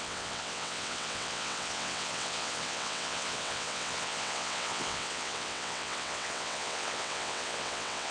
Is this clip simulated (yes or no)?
yes